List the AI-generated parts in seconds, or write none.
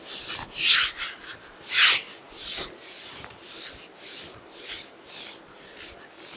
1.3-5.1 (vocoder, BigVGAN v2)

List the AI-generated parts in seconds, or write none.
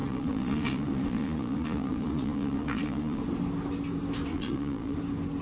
0.0-3.2 (vocoder, Vocos); 4.3-5.0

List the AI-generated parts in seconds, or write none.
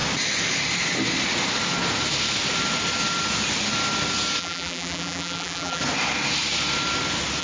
4.4-5.8 (vocoder, BigVGAN v2)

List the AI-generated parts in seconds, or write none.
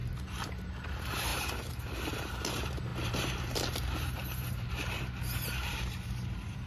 0.8-6.7 (vocoder, BigVGAN v2)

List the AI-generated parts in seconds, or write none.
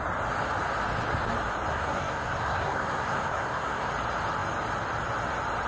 1.7-3.9 (codec, SNAC)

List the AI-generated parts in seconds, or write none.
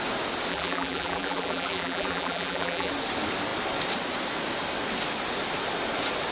0.5-2.9 (vocoder, BigVGAN v2)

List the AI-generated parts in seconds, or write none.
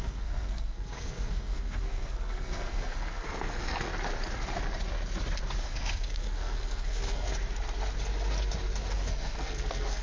0.0-3.9 (codec, SNAC); 5.6-7.3; 8.9-10.0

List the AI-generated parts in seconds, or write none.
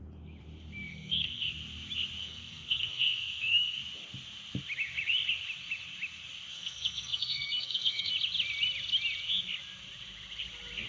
0.9-1.5 (codec, SNAC); 2.2-3.8; 6.5-8.1